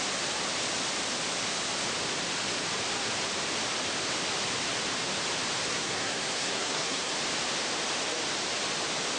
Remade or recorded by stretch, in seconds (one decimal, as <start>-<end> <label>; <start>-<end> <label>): 0.0-5.7 recorded; 5.7-7.1 remade; 7.1-9.2 recorded